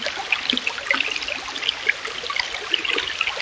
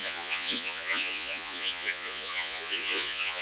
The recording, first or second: first